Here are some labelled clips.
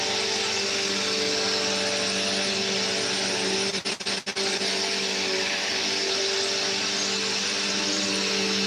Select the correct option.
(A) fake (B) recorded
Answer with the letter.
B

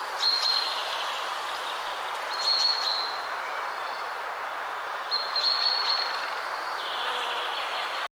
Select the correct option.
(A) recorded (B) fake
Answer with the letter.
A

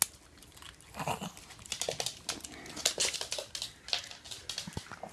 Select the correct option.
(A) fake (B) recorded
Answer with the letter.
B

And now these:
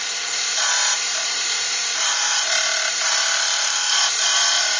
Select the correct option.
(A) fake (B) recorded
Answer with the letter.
A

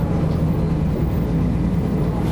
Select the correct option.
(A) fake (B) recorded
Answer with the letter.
B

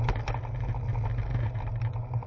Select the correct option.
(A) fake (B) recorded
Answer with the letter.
B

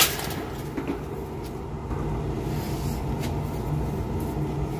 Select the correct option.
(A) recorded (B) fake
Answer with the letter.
A